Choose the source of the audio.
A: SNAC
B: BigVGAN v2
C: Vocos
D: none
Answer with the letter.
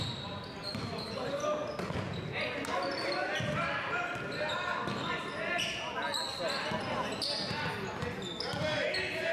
D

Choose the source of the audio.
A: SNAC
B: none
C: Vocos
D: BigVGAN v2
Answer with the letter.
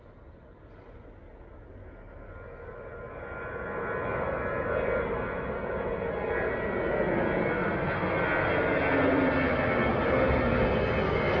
B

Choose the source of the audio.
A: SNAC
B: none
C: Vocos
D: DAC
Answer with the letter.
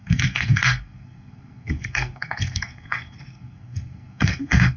A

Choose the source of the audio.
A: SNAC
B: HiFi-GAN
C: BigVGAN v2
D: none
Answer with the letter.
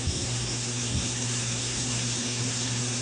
A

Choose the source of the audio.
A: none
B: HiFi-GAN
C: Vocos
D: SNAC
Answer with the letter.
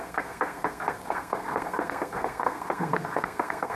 D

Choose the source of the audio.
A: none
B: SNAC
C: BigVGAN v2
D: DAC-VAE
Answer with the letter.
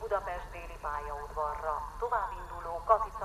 A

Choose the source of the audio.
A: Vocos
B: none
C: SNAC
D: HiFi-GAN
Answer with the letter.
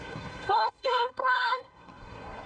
C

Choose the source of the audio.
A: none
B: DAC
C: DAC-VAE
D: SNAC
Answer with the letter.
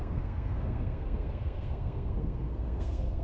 D